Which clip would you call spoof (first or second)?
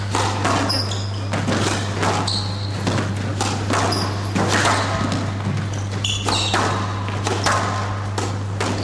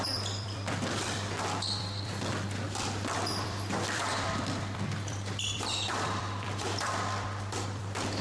second